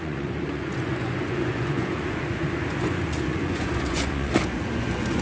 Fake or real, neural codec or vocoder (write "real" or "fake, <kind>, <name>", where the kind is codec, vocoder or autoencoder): fake, vocoder, Vocos